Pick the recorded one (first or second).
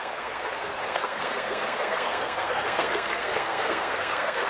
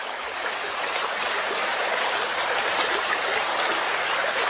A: second